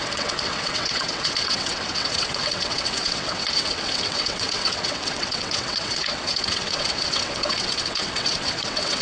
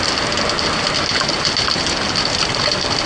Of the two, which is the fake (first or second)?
first